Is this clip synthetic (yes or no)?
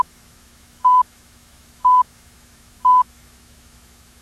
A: yes